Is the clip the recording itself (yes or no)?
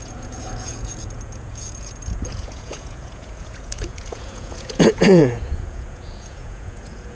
no